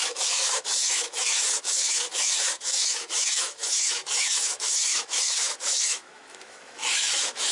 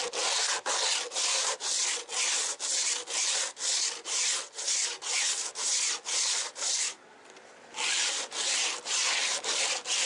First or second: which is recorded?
second